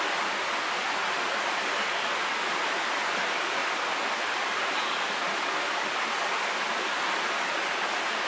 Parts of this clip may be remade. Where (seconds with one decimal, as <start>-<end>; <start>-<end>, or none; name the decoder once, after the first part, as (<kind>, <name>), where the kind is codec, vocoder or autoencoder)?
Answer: none